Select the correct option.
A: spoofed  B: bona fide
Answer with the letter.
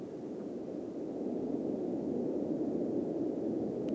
B